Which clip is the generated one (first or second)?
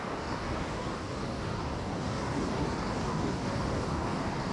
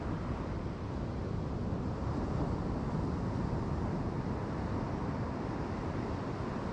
first